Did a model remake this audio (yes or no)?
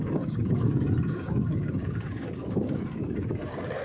yes